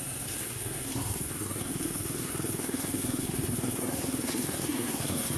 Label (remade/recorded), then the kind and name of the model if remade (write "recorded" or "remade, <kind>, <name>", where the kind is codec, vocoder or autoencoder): remade, codec, SNAC